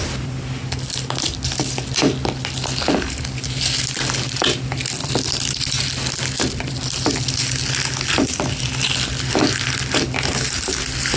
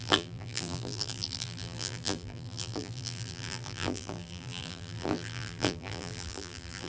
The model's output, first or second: second